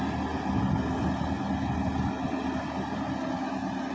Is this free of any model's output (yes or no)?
yes